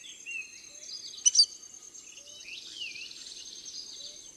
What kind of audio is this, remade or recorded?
recorded